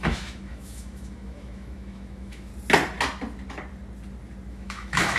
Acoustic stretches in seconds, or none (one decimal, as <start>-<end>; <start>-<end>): 2.5-4.5